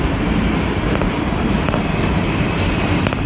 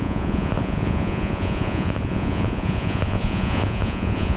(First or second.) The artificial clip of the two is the second